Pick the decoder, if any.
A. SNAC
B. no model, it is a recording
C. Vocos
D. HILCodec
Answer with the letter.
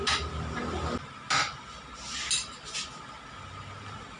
B